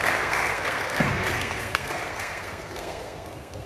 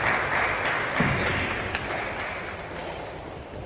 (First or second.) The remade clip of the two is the first